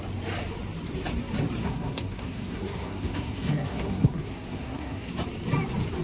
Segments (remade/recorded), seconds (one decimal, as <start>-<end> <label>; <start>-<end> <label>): 0.0-1.6 recorded; 1.6-5.1 remade; 5.1-6.0 recorded